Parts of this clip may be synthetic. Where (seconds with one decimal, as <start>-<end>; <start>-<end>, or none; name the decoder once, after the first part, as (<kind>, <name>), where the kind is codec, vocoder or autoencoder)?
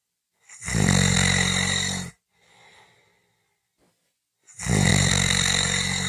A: 4.9-6.1 (vocoder, BigVGAN v2)